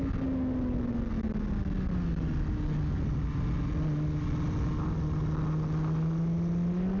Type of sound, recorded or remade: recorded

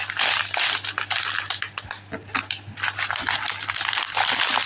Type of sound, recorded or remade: recorded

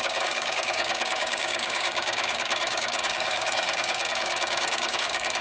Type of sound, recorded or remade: remade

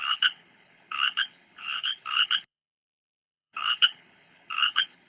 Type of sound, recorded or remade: remade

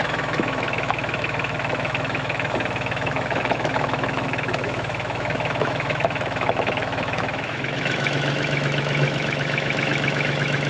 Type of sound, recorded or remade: remade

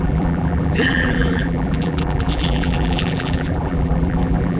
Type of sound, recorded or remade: remade